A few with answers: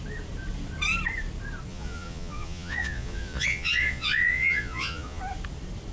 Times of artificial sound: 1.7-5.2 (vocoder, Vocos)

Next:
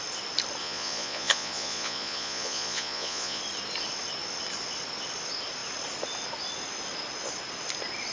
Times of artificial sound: 0.6-3.4 (vocoder, Vocos)

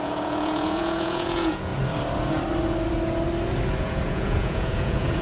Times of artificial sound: 0.0-1.7 (vocoder, Vocos); 3.8-5.2

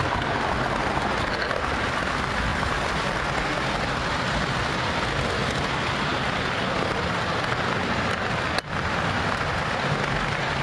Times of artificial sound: none

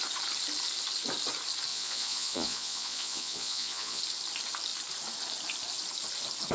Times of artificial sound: 1.7-4.0 (vocoder, Vocos)

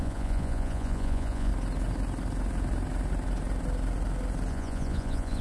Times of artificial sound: 0.0-1.5 (vocoder, Vocos); 4.5-5.4

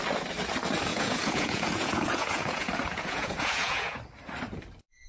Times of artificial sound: 0.9-4.0 (vocoder, Vocos)

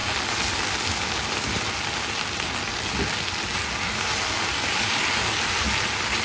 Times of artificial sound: none